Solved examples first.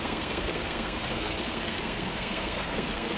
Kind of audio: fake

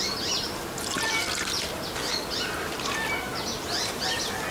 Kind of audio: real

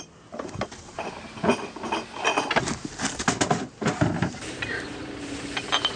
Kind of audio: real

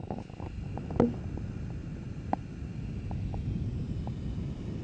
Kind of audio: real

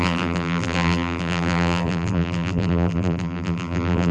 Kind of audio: fake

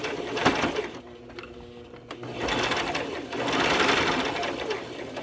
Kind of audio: real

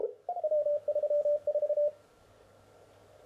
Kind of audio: fake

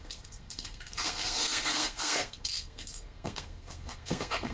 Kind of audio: fake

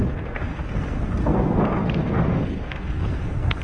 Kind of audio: fake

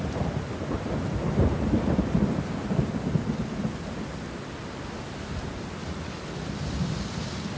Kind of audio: real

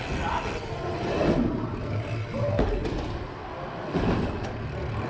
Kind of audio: real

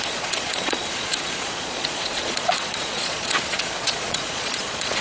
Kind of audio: fake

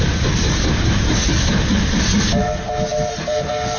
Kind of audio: real